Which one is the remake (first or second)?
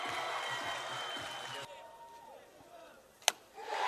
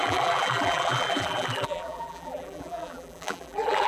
second